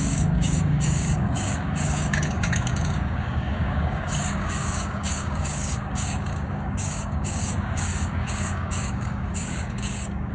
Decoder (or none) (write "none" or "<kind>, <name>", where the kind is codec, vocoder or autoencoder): codec, DAC